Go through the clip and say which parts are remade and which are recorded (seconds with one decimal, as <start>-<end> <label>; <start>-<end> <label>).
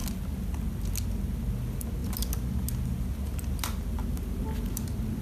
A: 0.0-5.2 recorded